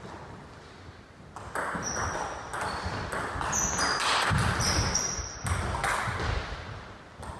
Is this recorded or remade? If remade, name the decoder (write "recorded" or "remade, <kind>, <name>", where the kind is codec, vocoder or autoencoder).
recorded